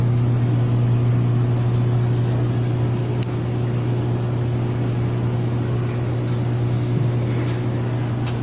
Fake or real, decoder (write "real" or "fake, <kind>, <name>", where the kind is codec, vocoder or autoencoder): real